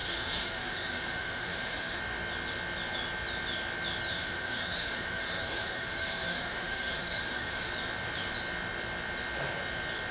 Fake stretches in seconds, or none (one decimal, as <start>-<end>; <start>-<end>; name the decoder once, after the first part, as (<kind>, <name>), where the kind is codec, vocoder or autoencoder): 0.0-2.0 (autoencoder, DAC-VAE); 4.1-7.7